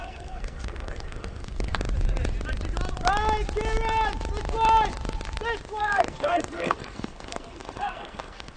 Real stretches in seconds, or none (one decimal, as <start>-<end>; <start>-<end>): 1.7-5.8